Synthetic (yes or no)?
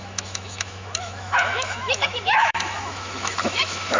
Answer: yes